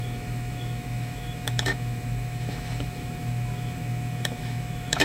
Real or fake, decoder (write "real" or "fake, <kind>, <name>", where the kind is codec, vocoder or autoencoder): fake, autoencoder, DAC-VAE